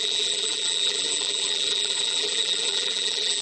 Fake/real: fake